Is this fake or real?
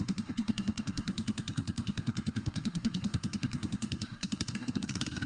fake